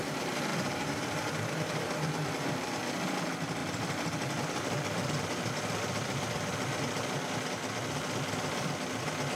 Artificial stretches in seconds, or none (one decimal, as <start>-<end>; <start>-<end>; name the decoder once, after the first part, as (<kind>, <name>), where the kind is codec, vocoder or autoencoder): 0.5-2.3 (vocoder, BigVGAN v2); 3.6-7.2